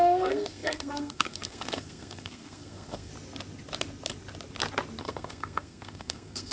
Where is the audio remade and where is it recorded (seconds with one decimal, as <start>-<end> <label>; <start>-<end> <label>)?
0.0-3.1 remade; 3.1-5.0 recorded; 5.0-6.5 remade